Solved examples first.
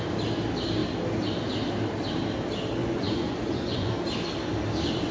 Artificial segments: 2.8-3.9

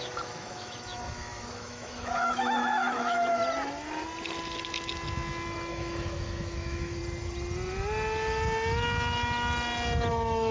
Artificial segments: 0.0-3.4; 5.7-7.0; 10.1-10.5